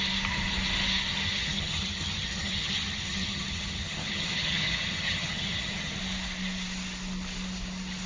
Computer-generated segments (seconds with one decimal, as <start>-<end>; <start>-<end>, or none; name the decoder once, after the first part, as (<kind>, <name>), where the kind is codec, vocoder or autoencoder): 1.1-6.0 (vocoder, HiFi-GAN)